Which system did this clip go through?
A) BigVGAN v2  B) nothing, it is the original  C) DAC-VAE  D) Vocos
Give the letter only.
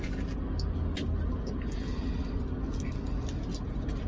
B